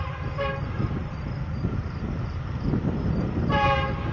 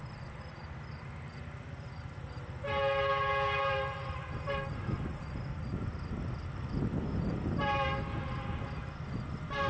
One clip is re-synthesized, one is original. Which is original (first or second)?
second